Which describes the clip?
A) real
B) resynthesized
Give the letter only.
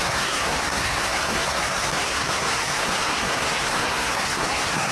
B